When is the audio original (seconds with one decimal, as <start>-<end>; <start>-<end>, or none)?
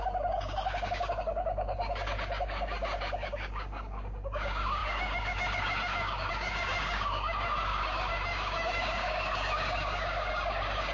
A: none